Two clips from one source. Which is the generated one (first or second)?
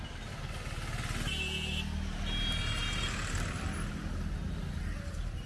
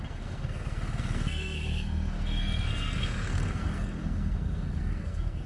second